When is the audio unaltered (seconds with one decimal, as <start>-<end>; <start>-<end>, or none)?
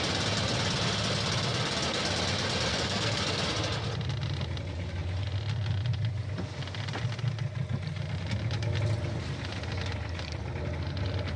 0.0-2.7; 3.2-11.4